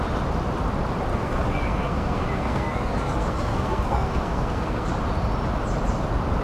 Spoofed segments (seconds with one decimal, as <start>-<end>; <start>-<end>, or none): 1.1-4.9